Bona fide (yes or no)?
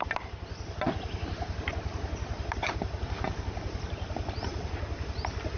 yes